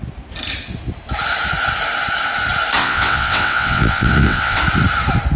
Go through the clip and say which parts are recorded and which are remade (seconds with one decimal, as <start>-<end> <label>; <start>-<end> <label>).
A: 0.0-2.8 recorded; 2.8-4.6 remade; 4.6-5.4 recorded